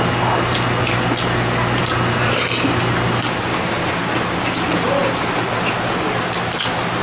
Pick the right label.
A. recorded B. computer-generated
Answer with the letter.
A